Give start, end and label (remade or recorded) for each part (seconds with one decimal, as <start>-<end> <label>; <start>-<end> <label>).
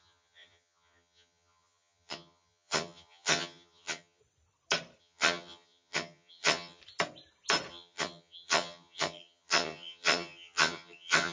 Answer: 0.0-4.2 remade; 4.2-5.0 recorded; 5.0-6.8 remade; 6.8-7.7 recorded; 7.7-11.3 remade